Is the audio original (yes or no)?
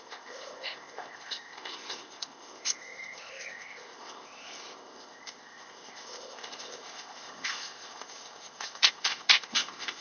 no